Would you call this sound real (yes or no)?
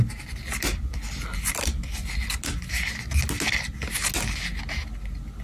yes